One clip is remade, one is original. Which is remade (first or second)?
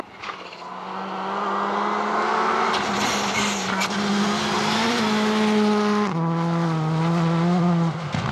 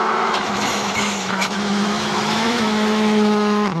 second